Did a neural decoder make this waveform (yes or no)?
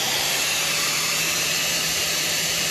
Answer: yes